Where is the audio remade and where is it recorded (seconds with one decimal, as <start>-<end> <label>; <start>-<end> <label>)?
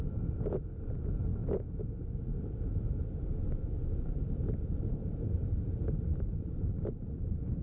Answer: 0.0-4.7 recorded; 4.7-7.6 remade